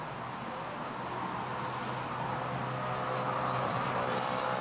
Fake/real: real